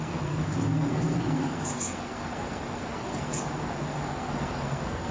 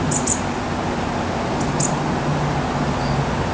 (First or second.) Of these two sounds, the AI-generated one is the first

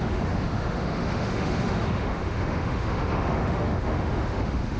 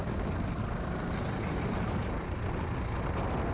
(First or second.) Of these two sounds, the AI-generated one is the first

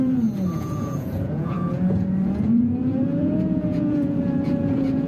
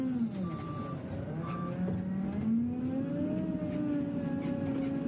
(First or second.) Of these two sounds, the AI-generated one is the first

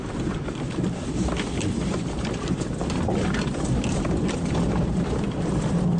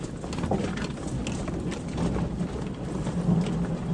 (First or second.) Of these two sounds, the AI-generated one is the first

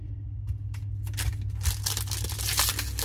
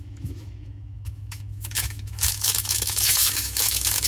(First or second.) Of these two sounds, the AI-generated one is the second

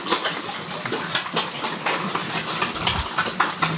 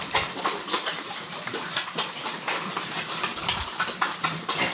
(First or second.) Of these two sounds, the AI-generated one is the second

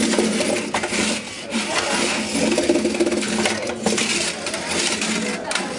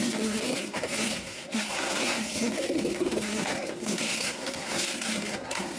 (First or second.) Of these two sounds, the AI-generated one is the second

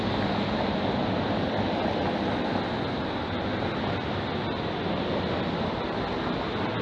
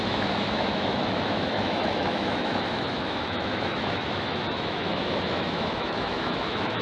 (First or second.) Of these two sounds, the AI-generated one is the second